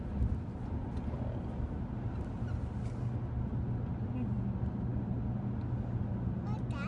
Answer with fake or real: real